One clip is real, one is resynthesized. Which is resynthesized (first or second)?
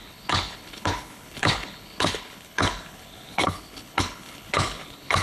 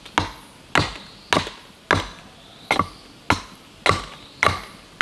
first